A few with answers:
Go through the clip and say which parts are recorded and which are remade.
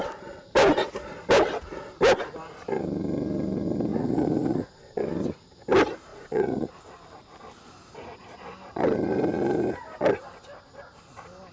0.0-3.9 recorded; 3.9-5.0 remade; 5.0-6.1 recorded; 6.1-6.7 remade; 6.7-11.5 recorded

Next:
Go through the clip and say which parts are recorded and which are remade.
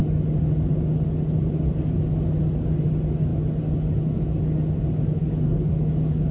0.0-5.2 recorded; 5.2-6.3 remade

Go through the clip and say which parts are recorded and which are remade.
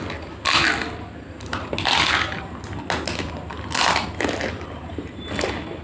0.0-5.8 recorded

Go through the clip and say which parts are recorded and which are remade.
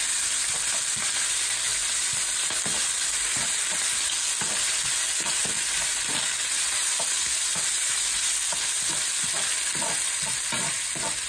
0.0-11.3 recorded